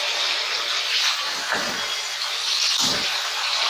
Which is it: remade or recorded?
recorded